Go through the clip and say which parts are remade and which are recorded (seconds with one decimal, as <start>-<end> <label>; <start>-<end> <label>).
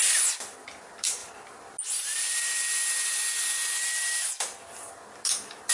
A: 0.0-5.7 recorded